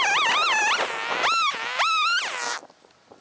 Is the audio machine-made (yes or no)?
no